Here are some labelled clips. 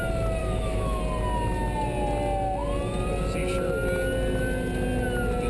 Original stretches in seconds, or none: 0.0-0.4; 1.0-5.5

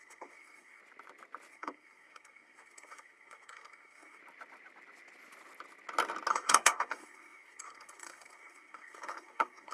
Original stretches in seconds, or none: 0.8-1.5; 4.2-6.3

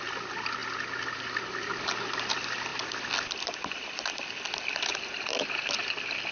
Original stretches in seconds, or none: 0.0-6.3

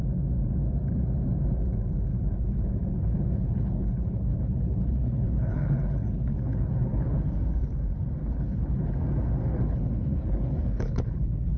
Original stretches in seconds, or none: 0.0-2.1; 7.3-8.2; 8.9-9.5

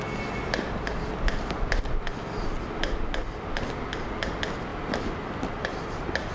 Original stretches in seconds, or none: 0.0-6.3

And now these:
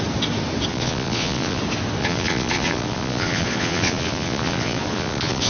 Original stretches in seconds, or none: 0.0-0.7; 1.6-2.0

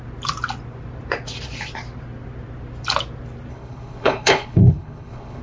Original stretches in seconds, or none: 0.0-3.5